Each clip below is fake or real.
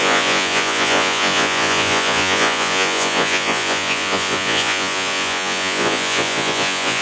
fake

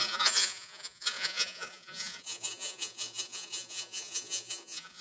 fake